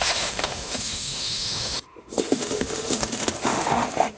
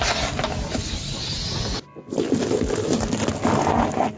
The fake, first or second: first